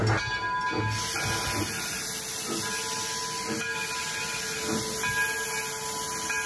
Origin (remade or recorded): recorded